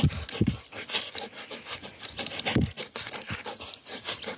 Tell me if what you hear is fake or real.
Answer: real